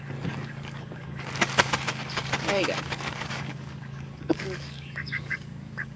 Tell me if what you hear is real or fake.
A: fake